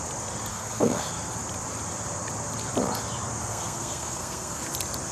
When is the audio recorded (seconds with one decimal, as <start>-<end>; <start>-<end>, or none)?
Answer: 0.0-0.5; 1.1-3.4; 4.6-5.1